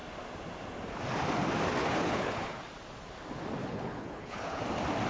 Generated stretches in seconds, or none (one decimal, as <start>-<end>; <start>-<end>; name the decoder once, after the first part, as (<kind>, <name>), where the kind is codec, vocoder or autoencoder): 1.8-2.6 (codec, HILCodec); 3.6-4.6